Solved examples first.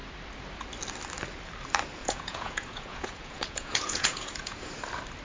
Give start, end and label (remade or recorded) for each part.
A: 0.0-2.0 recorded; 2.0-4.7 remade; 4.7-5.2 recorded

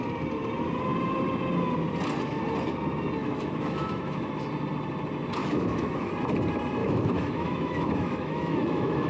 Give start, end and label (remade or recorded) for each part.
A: 0.0-3.2 recorded; 3.2-4.3 remade; 4.3-5.4 recorded; 5.4-6.1 remade; 6.1-6.8 recorded; 6.8-9.1 remade

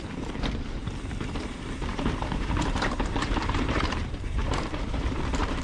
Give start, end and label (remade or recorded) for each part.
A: 0.0-1.9 recorded; 1.9-5.6 remade

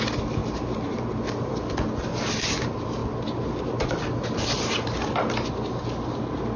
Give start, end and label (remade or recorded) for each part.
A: 0.0-6.6 recorded